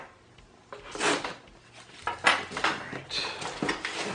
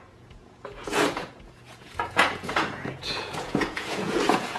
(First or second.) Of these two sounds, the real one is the first